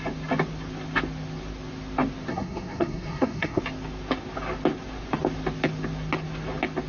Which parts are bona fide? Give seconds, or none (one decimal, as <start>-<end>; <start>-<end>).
0.0-2.3; 3.6-6.9